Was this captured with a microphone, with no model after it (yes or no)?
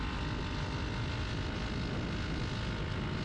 yes